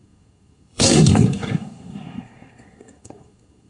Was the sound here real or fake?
fake